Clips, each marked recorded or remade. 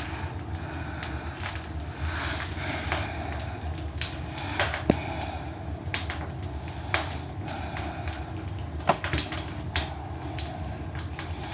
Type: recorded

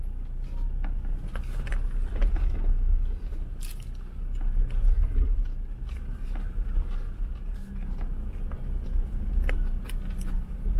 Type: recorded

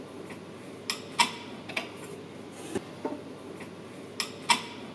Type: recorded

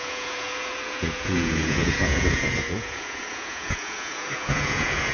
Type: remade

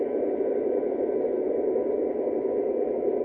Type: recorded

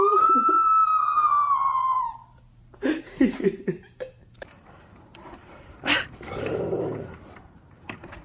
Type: remade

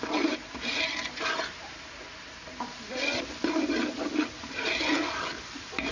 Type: recorded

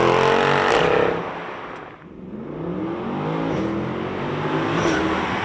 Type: recorded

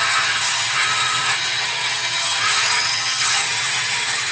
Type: remade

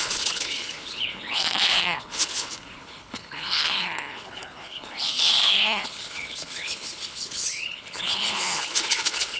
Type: remade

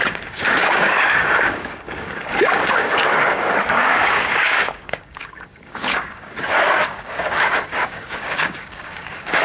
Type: remade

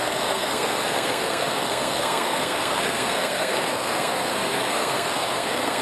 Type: remade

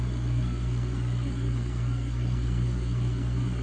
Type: remade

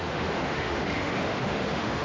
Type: remade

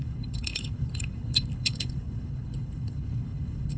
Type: remade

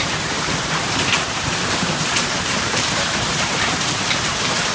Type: remade